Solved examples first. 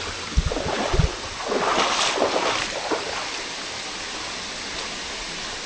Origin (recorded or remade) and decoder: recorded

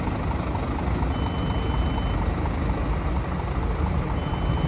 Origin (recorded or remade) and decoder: recorded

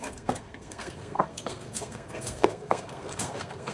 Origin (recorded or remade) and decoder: remade, codec, SNAC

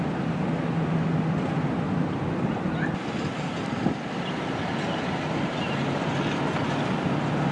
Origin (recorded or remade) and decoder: recorded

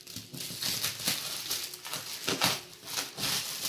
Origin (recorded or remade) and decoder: recorded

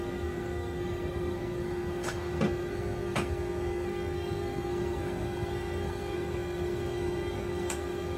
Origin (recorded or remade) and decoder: remade, codec, SNAC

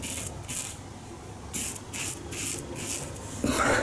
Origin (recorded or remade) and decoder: recorded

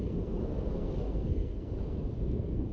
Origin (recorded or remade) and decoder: remade, codec, SNAC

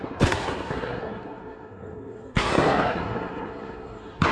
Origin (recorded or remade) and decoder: remade, codec, SNAC